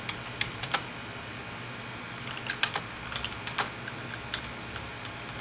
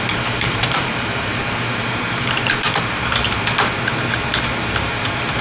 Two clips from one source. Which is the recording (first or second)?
first